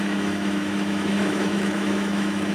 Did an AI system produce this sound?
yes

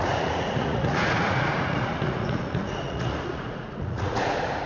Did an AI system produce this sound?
yes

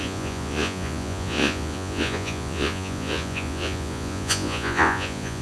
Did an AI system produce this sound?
yes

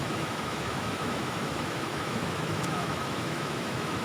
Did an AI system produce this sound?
yes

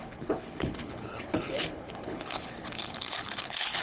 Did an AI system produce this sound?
yes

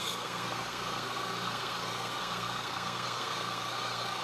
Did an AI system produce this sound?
yes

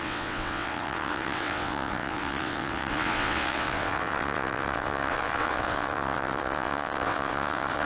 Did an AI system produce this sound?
yes